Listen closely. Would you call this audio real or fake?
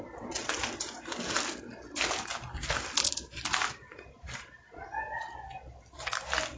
real